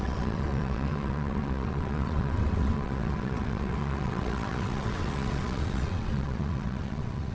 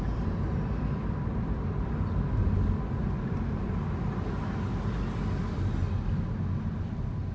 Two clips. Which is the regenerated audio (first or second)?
first